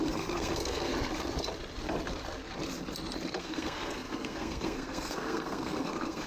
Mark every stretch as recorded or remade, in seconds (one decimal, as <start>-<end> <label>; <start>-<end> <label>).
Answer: 0.0-0.9 remade; 0.9-3.4 recorded; 3.4-6.3 remade